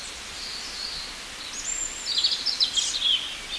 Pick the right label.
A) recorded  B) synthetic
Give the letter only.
A